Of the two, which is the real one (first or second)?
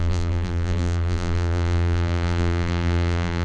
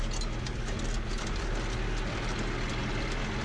second